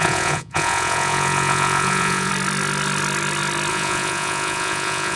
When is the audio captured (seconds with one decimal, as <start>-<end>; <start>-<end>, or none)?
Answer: 2.3-3.7

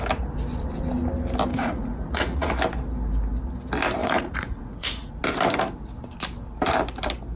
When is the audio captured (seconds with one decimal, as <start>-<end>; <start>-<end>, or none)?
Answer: 0.0-1.5; 2.5-4.0; 5.1-7.4

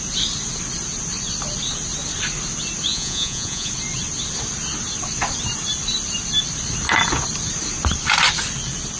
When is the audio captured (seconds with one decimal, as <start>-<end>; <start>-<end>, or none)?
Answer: 0.0-2.9; 3.7-9.0

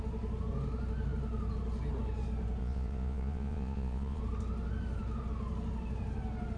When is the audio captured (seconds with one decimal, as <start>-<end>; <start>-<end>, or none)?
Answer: 0.0-2.6; 4.2-6.6

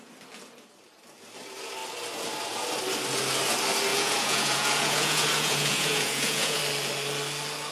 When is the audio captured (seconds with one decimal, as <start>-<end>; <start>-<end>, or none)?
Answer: 0.0-3.9; 6.6-7.7

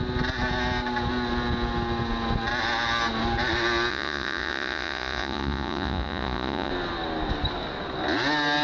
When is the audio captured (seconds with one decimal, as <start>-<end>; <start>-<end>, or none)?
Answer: 0.0-3.9; 6.7-8.6

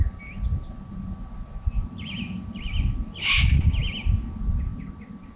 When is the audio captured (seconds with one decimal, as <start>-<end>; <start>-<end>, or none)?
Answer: 0.0-5.4